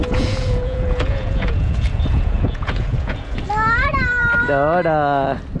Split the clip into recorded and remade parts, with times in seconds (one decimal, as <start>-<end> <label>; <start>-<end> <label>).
0.0-3.4 remade; 3.4-5.6 recorded